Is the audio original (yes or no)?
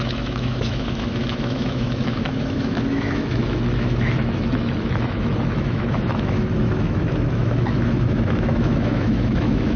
no